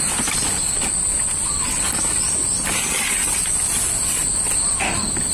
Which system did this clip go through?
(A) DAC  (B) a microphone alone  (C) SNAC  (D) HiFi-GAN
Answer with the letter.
B